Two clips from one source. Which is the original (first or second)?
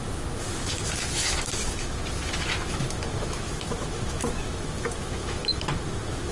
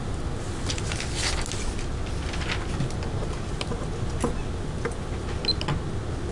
second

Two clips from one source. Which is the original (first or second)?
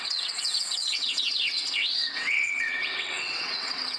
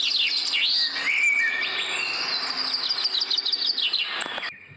second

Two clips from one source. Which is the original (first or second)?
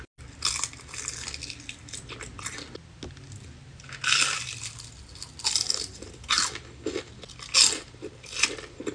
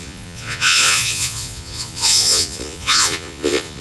first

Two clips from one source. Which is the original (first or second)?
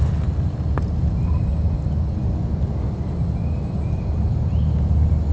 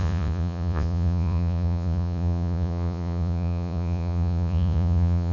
first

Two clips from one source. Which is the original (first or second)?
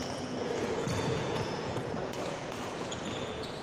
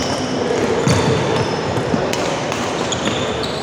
second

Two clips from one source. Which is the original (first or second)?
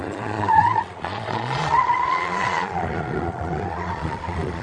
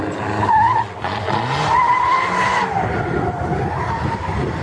second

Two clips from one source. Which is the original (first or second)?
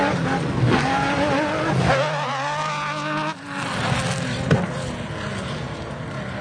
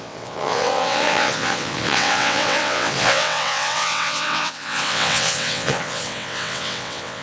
first